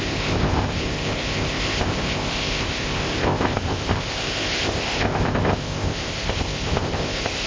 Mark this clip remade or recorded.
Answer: remade